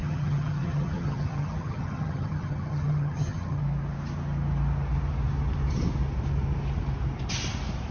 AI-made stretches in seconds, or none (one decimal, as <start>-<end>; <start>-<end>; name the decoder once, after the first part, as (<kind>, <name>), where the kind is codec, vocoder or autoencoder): 0.0-3.6 (vocoder, HiFi-GAN)